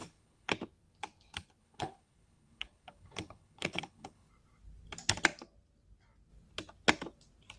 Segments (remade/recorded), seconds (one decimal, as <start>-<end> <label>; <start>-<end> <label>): 0.0-0.5 remade; 0.5-1.6 recorded; 1.6-4.3 remade; 4.3-7.6 recorded